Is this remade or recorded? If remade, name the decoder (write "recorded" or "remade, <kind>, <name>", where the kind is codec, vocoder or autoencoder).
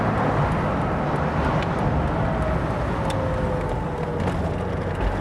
recorded